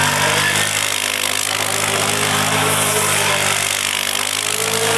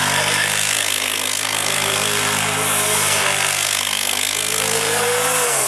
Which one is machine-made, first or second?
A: second